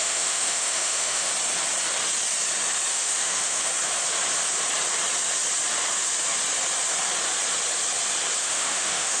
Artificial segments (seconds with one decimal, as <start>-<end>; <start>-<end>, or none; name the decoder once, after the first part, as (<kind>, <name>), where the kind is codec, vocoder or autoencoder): 0.0-1.3 (autoencoder, DAC-VAE); 2.9-3.7; 8.4-9.2